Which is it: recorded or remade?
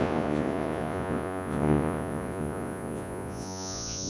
remade